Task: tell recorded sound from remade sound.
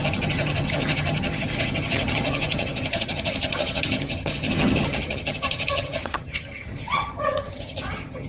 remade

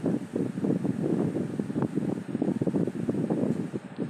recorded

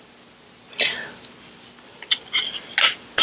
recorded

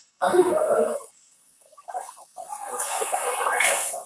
remade